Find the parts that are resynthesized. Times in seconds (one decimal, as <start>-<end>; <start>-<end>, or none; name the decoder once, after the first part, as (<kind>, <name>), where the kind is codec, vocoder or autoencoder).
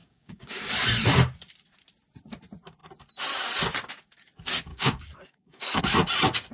0.0-0.6 (codec, DAC); 4.7-5.8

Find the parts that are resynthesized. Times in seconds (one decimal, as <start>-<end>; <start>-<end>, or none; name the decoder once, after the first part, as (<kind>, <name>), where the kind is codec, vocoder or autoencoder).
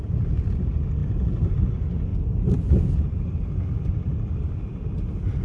none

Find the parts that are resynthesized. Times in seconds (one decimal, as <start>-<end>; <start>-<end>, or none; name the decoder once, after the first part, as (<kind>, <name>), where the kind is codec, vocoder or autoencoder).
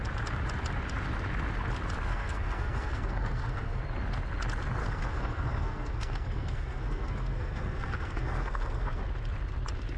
2.1-3.8 (codec, SNAC); 4.8-9.0